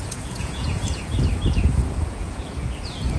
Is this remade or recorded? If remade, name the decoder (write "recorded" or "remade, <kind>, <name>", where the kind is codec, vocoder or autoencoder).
remade, vocoder, Vocos